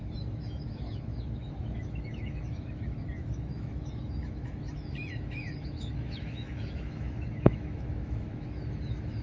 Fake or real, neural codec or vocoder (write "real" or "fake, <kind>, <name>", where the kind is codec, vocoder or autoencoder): fake, autoencoder, DAC-VAE